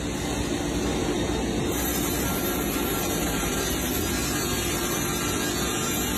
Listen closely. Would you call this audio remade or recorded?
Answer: recorded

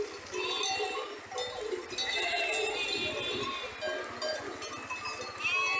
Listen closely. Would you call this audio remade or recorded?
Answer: recorded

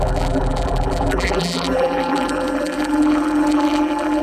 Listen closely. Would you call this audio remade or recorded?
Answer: remade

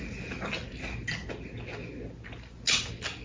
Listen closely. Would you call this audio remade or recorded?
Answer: recorded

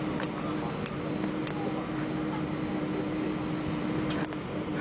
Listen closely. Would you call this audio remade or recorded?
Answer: recorded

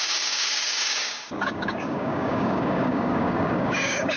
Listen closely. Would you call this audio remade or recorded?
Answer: remade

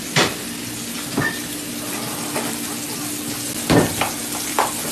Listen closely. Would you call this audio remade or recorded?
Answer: recorded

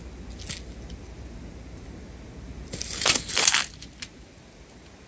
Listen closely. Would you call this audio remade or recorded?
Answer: recorded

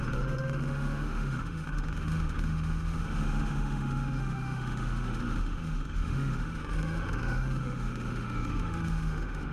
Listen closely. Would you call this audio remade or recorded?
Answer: remade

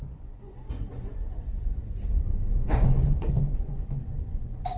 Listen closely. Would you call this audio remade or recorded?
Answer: remade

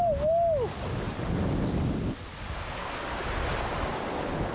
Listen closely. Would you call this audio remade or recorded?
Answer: recorded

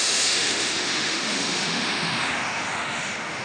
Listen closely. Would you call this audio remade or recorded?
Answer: remade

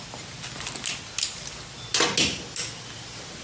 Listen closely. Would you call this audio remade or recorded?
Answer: recorded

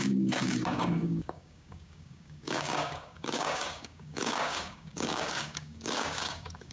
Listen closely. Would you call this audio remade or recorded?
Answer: remade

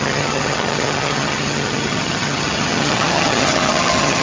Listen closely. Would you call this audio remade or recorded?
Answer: remade